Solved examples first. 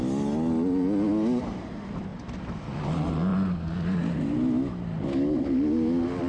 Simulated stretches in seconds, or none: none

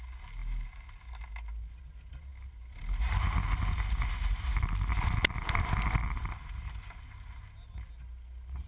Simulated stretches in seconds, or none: none

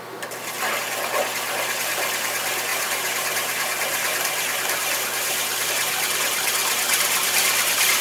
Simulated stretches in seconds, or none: 2.7-5.7 (vocoder, BigVGAN v2); 6.6-8.0

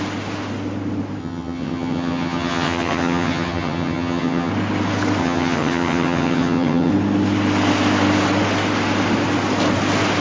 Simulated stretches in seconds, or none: 1.2-4.5 (vocoder, HiFi-GAN); 5.2-6.9

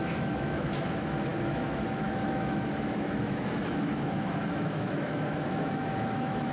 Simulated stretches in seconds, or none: 0.0-6.5 (autoencoder, DAC-VAE)

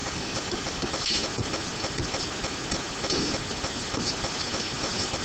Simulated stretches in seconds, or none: 0.0-0.9 (codec, DAC)

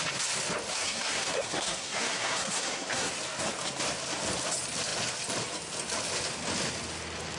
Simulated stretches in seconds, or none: 0.7-3.1 (codec, SNAC)

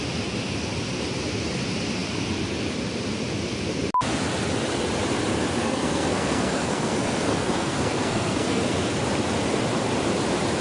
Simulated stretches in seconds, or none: 5.6-8.9 (codec, SNAC)